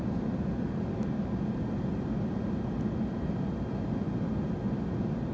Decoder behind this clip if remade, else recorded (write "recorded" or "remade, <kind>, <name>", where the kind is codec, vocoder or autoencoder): recorded